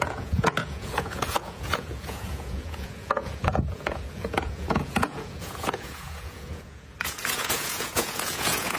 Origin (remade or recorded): remade